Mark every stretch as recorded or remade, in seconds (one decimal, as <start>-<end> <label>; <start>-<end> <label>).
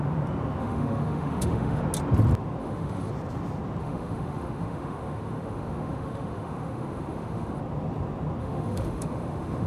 0.0-0.6 recorded; 0.6-1.8 remade; 1.8-2.6 recorded; 2.6-3.1 remade; 3.1-3.8 recorded; 3.8-7.6 remade; 7.6-8.4 recorded; 8.4-9.7 remade